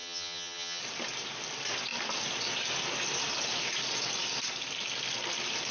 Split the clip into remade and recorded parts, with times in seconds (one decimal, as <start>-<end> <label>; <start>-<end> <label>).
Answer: 0.0-0.8 remade; 0.8-5.7 recorded